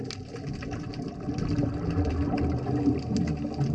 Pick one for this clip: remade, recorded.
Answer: recorded